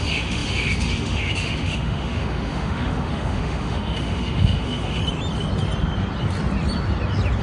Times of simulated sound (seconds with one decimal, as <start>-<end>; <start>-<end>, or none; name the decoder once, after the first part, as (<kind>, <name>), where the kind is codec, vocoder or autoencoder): 0.0-5.0 (autoencoder, DAC-VAE)